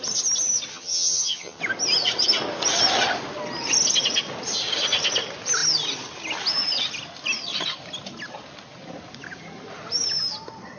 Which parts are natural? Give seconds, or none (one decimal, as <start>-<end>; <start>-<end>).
0.0-0.7; 1.6-10.8